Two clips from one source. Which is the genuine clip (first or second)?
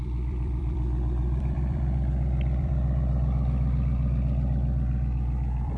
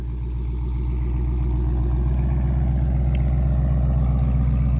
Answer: second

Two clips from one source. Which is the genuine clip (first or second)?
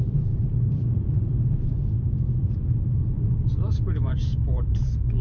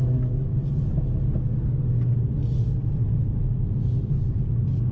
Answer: second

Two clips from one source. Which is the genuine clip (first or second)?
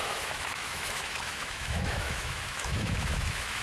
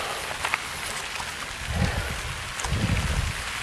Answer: second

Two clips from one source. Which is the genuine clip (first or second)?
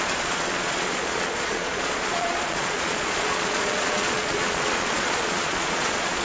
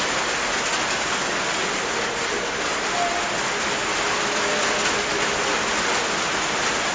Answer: second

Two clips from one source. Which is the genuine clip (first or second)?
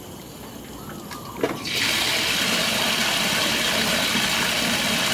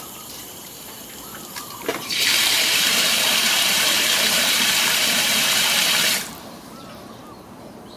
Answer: first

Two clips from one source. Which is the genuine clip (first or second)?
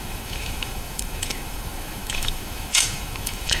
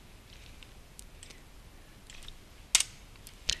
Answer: second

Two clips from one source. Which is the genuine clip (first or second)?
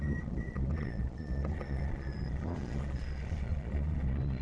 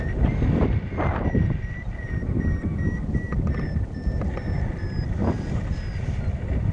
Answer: second